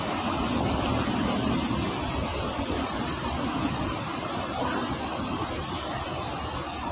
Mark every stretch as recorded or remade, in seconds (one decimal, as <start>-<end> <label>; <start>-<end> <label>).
0.0-2.3 recorded; 2.3-6.3 remade; 6.3-6.9 recorded